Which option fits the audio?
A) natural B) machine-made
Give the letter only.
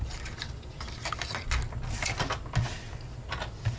A